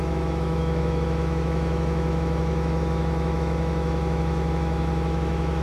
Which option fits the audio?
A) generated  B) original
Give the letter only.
A